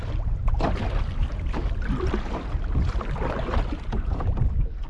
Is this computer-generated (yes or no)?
yes